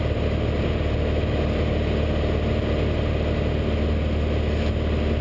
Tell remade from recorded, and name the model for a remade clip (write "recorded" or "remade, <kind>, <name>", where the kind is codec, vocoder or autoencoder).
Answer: recorded